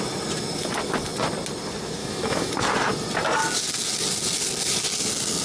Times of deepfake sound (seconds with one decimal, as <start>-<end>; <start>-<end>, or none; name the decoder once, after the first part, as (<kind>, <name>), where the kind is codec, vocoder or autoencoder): 2.0-2.5 (autoencoder, DAC-VAE)